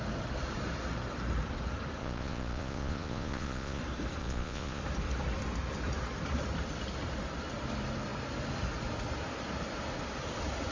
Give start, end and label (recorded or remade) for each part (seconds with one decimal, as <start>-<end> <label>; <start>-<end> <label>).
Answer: 0.0-2.0 recorded; 2.0-3.8 remade; 3.8-4.2 recorded; 4.2-4.8 remade; 4.8-10.7 recorded